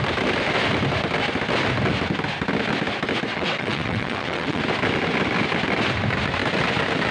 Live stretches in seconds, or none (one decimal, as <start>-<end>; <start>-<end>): 0.0-3.3; 4.6-7.1